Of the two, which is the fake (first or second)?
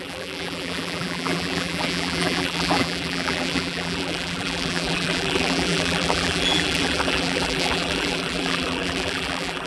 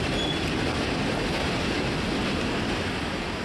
first